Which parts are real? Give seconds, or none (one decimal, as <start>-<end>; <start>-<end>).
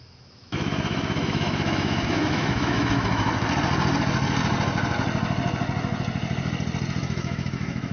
3.3-7.0